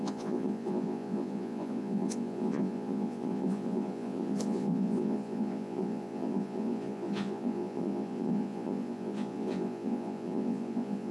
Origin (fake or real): fake